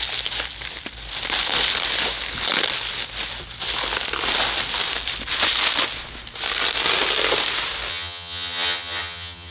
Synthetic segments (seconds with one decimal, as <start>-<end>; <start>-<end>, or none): 7.9-9.5